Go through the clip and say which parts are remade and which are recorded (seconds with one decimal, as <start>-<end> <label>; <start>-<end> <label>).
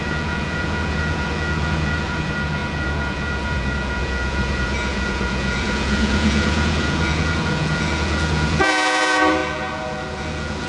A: 0.0-10.7 remade